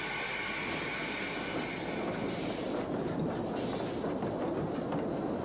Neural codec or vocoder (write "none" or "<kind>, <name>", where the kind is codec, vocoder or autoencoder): none